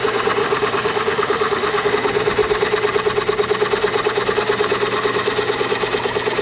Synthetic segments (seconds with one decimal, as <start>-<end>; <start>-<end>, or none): 0.4-1.9